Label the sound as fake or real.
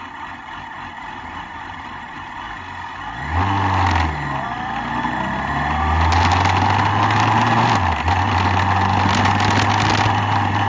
real